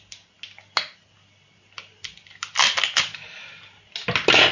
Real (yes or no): yes